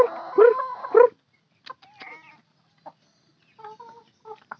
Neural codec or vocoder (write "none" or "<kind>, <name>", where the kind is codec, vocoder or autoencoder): none